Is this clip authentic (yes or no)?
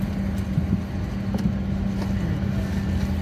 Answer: yes